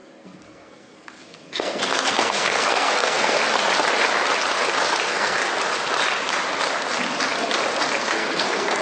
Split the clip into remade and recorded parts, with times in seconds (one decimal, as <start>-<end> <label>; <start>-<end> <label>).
0.0-3.4 remade; 3.4-5.0 recorded; 5.0-5.4 remade; 5.4-8.0 recorded; 8.0-8.8 remade